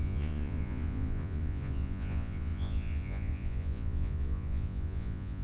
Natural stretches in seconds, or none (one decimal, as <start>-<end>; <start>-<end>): none